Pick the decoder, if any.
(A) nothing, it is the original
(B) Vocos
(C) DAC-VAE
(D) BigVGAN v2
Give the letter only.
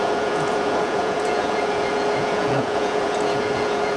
B